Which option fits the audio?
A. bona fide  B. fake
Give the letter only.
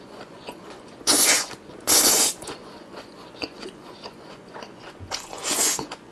B